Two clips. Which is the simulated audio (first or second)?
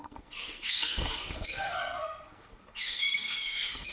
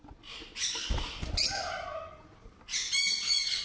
first